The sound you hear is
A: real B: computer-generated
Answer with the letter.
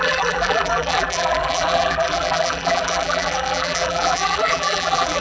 B